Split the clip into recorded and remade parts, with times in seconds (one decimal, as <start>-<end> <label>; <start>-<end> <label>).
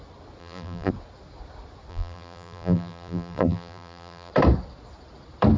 0.0-0.4 recorded; 0.4-0.9 remade; 0.9-1.9 recorded; 1.9-4.3 remade; 4.3-5.6 recorded